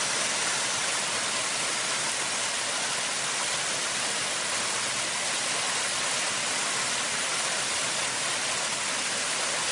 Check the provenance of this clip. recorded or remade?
recorded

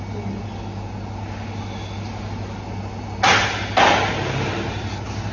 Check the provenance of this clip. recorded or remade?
recorded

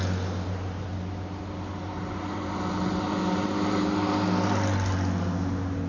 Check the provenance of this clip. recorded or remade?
recorded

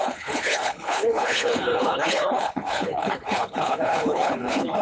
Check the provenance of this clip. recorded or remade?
remade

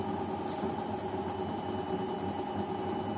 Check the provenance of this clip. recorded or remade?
recorded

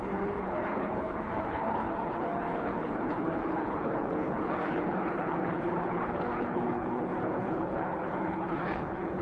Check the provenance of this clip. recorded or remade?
remade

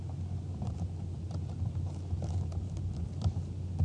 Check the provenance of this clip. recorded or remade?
recorded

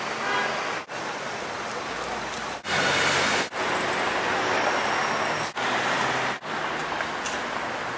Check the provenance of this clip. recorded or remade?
recorded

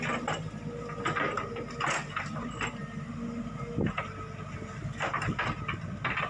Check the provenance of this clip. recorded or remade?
recorded